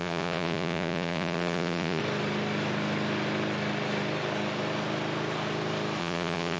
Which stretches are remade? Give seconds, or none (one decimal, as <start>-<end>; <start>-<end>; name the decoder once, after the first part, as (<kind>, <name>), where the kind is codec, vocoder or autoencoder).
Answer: 0.0-2.0 (vocoder, Vocos); 6.0-6.6